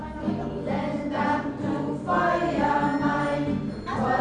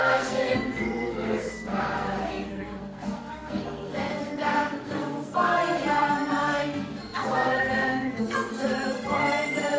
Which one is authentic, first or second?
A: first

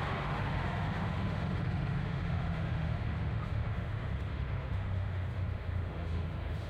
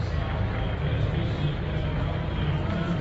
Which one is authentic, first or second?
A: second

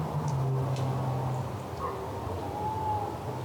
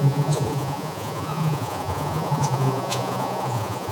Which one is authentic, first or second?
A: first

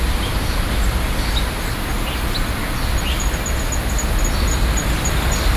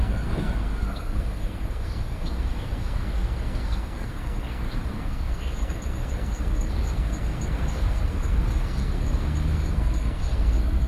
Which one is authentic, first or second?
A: first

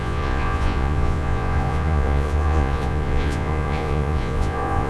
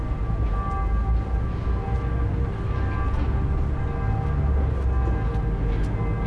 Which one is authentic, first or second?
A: second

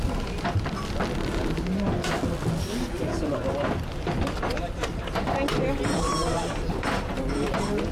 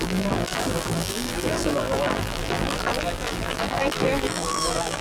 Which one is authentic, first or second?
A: first